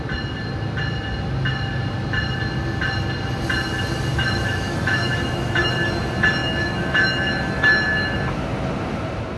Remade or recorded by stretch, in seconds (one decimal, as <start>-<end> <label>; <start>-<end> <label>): 0.0-4.1 recorded; 4.1-5.7 remade; 5.7-6.4 recorded; 6.4-8.2 remade; 8.2-9.4 recorded